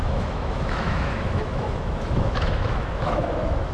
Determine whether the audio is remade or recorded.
remade